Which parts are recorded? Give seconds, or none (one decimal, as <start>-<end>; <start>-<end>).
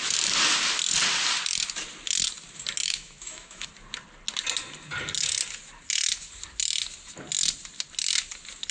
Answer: 0.0-2.8; 3.7-8.7